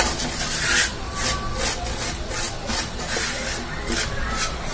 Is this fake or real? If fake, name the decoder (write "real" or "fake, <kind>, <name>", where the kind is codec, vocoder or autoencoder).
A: real